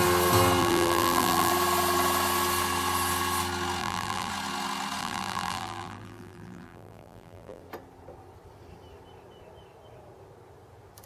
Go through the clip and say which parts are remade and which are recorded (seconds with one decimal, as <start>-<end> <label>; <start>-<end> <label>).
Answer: 0.0-0.6 recorded; 0.6-1.5 remade; 1.5-3.8 recorded; 3.8-4.3 remade; 4.3-5.0 recorded; 5.0-7.6 remade; 7.6-11.1 recorded